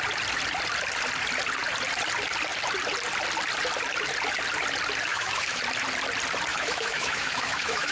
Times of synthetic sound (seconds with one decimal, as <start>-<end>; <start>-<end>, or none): 5.1-5.6; 6.5-7.9